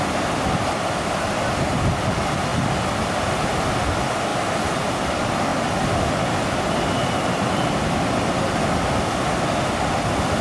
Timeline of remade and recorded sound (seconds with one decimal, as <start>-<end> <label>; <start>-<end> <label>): 0.0-10.4 recorded